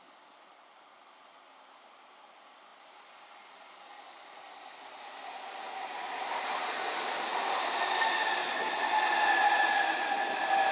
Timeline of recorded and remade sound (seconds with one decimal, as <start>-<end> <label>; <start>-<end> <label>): 0.0-10.7 recorded